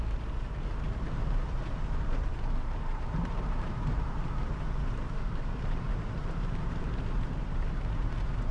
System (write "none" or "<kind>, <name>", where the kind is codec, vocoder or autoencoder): vocoder, BigVGAN v2